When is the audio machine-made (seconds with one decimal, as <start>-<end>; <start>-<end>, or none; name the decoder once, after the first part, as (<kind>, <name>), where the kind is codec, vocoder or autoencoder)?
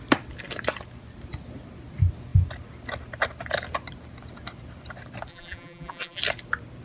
5.3-6.2 (vocoder, BigVGAN v2)